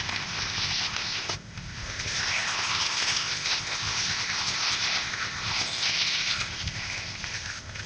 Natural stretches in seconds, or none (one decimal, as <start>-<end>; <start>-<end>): none